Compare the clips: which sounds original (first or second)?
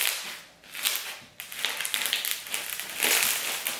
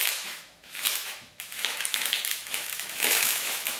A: first